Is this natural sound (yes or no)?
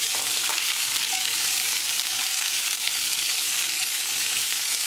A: no